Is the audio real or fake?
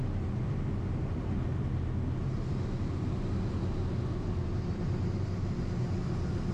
real